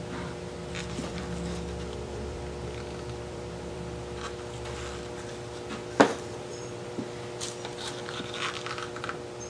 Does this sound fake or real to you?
fake